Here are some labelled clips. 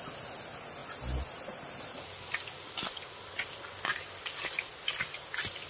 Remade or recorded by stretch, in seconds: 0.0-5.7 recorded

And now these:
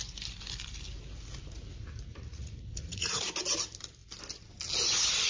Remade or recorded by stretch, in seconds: 0.0-2.3 recorded; 2.3-3.2 remade; 3.2-5.3 recorded

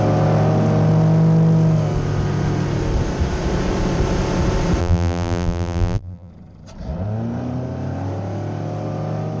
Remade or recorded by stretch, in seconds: 0.0-4.8 recorded; 4.8-6.3 remade; 6.3-9.4 recorded

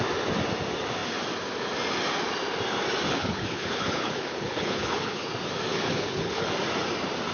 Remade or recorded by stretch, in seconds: 0.0-3.1 recorded; 3.1-5.3 remade; 5.3-5.7 recorded; 5.7-6.5 remade; 6.5-7.3 recorded

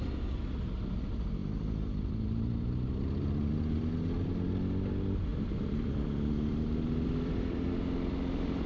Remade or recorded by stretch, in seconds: 0.0-5.3 recorded; 5.3-7.7 remade; 7.7-8.7 recorded